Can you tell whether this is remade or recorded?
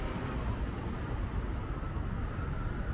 recorded